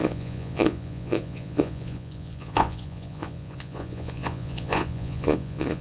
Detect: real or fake fake